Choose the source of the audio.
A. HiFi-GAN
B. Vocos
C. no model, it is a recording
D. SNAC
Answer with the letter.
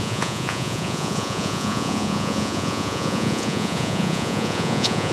B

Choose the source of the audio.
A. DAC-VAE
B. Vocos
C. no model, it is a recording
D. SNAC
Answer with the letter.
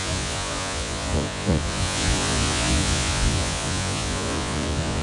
B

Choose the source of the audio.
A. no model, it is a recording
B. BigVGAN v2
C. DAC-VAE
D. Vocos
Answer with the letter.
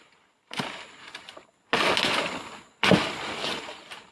A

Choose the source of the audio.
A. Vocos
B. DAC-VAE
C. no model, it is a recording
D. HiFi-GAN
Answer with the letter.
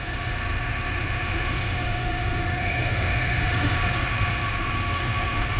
B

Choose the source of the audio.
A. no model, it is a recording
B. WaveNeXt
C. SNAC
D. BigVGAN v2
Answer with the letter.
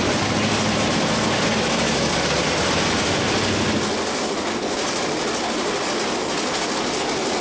A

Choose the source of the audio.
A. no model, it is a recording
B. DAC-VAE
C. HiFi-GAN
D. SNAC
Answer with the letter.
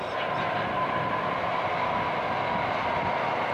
A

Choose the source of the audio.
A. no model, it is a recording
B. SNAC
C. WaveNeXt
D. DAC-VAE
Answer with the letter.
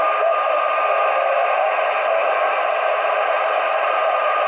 A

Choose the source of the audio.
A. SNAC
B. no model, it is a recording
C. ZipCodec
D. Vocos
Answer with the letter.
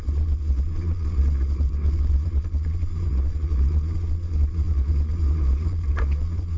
D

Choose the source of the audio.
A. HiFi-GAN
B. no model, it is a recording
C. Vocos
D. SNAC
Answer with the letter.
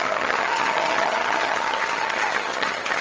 A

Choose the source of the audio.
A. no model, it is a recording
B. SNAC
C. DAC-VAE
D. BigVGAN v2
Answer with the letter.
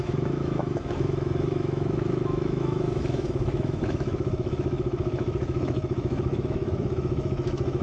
C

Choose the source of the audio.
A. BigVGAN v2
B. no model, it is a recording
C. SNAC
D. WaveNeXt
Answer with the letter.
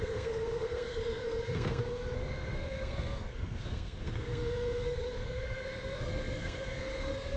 C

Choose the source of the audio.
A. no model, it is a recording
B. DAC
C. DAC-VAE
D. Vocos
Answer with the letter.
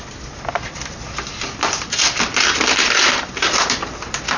A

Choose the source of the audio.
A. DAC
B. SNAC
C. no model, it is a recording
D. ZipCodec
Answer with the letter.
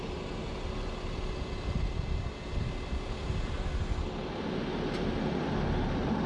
C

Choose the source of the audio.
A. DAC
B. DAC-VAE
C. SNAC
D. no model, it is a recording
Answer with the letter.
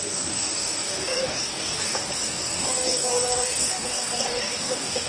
A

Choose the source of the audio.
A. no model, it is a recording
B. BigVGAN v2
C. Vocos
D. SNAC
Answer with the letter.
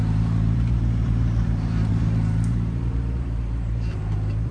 B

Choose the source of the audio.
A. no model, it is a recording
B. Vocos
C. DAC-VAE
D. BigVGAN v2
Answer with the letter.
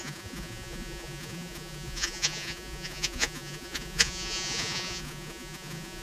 B